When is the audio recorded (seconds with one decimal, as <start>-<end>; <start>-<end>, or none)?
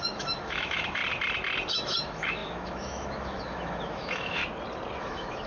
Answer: 1.0-1.7; 4.4-5.0